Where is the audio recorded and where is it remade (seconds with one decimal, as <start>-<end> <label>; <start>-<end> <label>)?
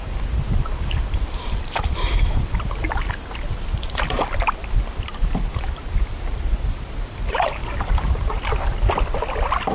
0.0-9.7 recorded